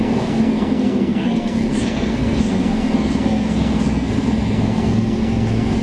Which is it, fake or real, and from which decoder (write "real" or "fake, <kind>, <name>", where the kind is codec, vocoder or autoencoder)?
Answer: fake, codec, SNAC